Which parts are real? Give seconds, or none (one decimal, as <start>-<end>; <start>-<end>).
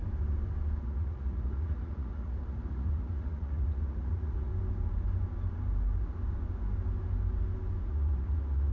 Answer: 0.0-0.8; 4.5-7.9